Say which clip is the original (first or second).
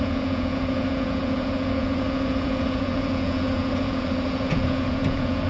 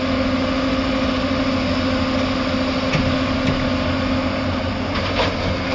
second